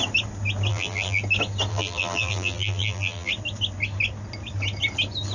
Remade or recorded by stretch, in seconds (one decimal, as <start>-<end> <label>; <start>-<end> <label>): 0.0-0.7 recorded; 0.7-1.2 remade; 1.2-1.7 recorded; 1.7-3.3 remade; 3.3-5.3 recorded